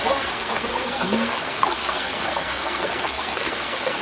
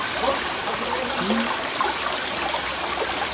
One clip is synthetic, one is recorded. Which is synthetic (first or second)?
first